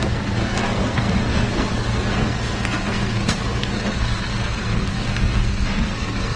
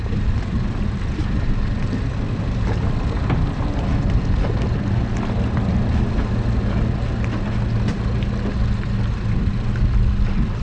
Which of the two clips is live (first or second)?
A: second